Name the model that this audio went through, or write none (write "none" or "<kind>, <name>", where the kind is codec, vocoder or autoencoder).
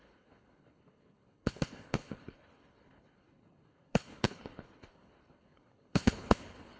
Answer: codec, HILCodec